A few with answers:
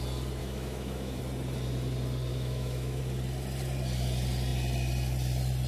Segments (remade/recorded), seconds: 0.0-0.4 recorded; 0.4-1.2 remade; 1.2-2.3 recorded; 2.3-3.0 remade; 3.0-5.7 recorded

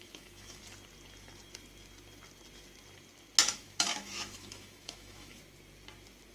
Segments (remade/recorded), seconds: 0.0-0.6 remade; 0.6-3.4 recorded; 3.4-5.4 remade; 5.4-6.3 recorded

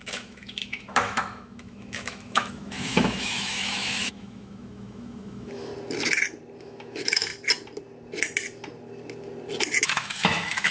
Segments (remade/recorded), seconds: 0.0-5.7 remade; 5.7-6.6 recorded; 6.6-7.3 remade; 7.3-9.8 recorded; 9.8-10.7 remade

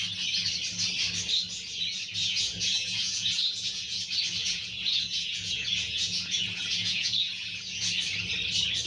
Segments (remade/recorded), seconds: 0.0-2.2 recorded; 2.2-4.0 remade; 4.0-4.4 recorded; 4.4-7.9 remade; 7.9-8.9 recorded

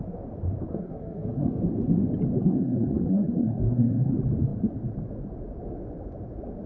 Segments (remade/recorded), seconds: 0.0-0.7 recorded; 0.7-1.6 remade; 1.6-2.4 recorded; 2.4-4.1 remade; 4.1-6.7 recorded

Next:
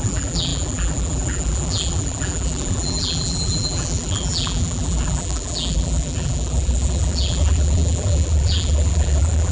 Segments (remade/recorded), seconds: 0.0-9.5 remade